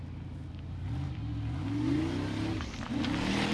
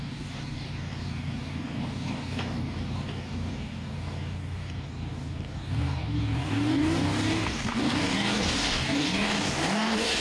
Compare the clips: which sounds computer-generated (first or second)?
second